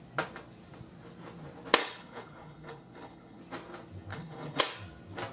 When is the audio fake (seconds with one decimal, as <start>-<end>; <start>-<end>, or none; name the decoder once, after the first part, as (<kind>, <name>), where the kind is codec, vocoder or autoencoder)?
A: 1.8-3.4 (codec, HILCodec); 4.1-4.6